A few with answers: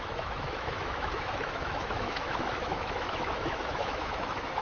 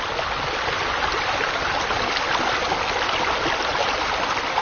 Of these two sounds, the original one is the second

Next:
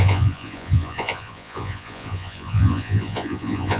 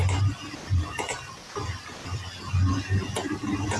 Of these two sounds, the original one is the second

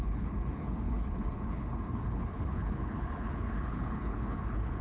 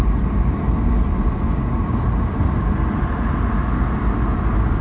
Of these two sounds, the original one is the second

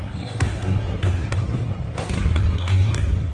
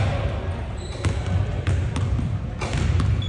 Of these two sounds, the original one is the second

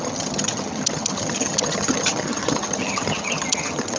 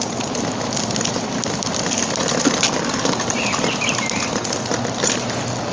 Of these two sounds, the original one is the second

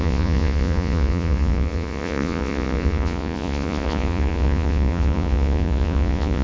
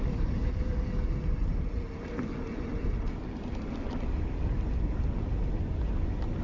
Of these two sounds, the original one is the second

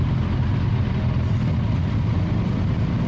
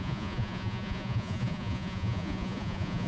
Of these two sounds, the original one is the first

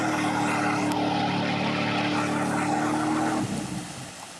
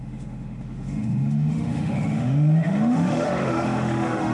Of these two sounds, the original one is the first